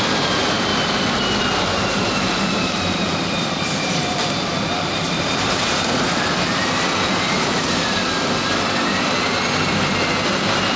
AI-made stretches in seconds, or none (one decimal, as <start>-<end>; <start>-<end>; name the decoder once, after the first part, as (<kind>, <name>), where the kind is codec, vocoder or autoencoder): 0.7-1.4 (vocoder, BigVGAN v2); 1.8-6.7